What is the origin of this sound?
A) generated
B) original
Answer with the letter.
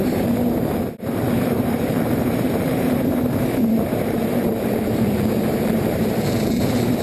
A